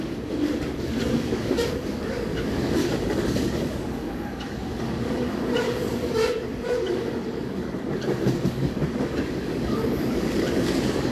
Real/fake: fake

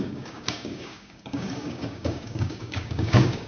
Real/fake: fake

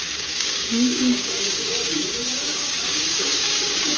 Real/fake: fake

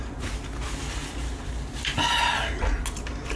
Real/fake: real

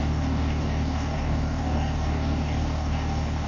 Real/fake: fake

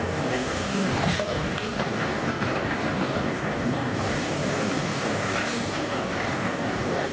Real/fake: fake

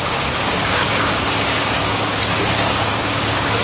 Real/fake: fake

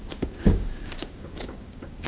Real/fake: fake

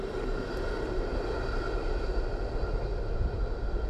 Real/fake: real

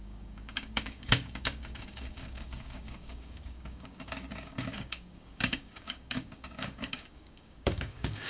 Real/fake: fake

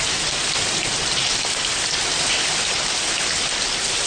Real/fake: real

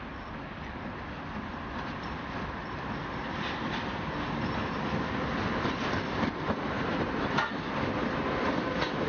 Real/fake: real